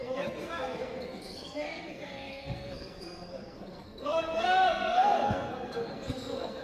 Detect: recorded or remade remade